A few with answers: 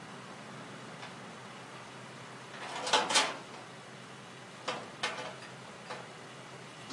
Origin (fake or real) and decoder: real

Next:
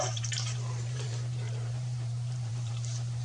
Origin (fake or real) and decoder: fake, vocoder, BigVGAN v2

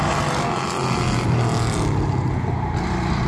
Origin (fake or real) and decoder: real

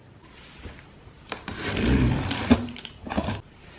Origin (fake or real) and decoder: fake, vocoder, BigVGAN v2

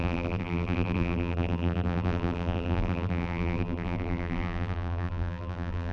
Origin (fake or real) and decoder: fake, vocoder, BigVGAN v2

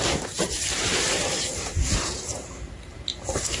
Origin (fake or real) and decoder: fake, vocoder, BigVGAN v2